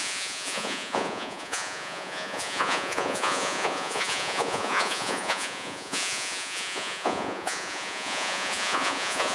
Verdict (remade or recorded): remade